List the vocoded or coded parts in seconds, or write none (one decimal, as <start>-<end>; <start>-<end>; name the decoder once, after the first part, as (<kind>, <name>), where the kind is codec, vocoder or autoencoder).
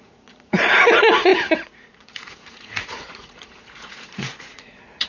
0.0-5.1 (vocoder, Vocos)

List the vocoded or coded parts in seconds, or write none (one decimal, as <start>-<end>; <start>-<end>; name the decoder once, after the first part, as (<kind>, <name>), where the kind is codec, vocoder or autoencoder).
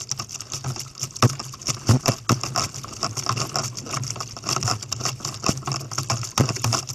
none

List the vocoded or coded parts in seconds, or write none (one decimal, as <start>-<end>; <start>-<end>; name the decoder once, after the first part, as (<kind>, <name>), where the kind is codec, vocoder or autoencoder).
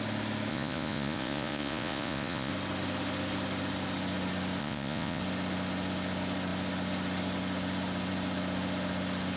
0.5-2.5 (vocoder, Vocos); 4.6-5.2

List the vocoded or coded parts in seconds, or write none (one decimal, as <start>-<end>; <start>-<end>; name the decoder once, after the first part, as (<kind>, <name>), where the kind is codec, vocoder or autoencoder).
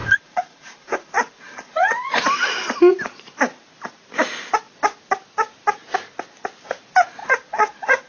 0.0-2.2 (vocoder, Vocos); 7.2-8.1